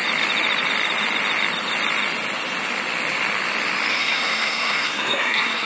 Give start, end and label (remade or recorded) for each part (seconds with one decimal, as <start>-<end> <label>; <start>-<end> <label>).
0.0-3.9 recorded; 3.9-5.7 remade